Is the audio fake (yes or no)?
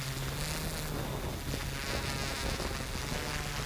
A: no